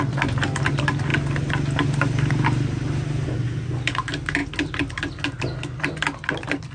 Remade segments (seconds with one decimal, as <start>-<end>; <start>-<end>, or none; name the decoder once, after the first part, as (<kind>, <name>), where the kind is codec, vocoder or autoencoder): none